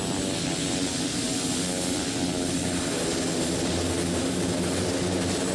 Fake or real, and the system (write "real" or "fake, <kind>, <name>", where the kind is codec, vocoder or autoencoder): real